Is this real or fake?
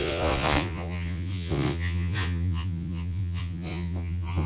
fake